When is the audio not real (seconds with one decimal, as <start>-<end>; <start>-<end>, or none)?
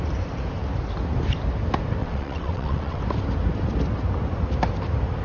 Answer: 2.0-3.0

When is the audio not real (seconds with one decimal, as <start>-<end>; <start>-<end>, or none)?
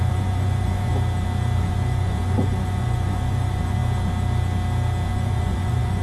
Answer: 0.0-0.9; 1.6-3.8; 5.1-6.0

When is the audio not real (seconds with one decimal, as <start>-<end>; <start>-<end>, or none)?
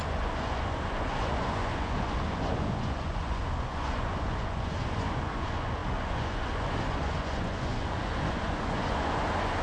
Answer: 0.0-9.6